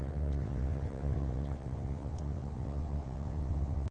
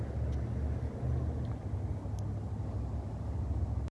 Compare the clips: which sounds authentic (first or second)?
second